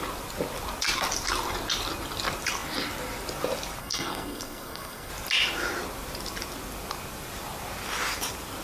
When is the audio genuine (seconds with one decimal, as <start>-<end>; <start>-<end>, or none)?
0.0-3.8; 5.1-8.6